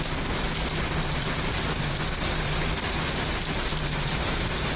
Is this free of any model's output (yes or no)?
yes